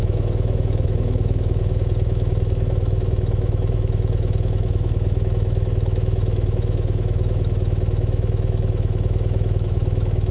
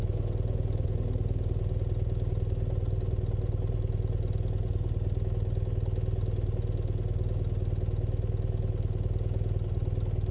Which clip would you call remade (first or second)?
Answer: first